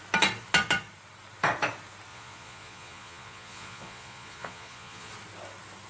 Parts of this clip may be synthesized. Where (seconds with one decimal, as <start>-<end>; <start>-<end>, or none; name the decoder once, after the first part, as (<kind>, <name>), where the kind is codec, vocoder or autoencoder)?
2.1-5.1 (vocoder, Vocos)